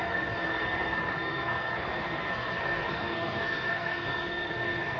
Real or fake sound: fake